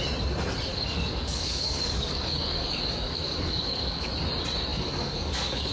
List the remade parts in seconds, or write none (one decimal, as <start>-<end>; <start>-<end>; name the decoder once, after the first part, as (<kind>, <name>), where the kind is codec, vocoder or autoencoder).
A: 0.7-4.1 (codec, DAC); 4.7-5.7